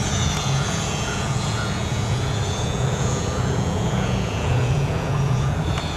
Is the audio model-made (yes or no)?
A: yes